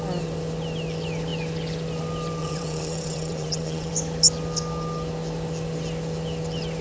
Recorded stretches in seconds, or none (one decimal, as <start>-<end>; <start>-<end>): 0.0-2.4; 3.9-6.8